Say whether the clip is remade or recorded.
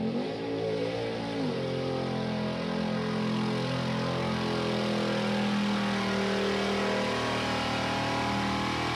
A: recorded